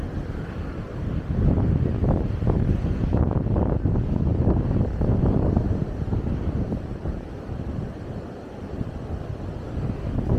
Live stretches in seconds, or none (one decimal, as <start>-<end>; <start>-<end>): 1.9-4.3; 8.4-10.4